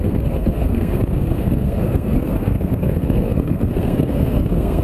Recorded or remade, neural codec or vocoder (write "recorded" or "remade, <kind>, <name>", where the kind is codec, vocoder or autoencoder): remade, codec, SNAC